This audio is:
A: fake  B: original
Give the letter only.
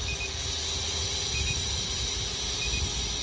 B